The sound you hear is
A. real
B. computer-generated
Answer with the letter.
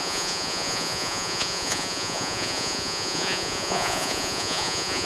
B